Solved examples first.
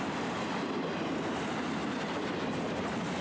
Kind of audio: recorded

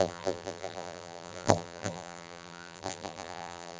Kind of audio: remade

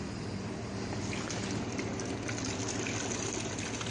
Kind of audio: recorded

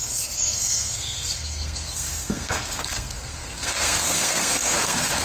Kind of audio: remade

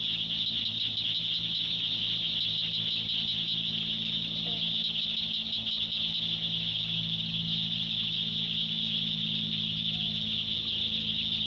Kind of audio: recorded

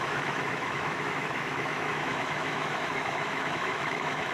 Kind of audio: remade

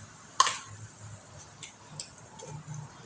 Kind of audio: recorded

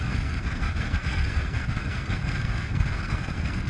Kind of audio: remade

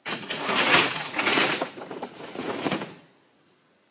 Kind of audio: remade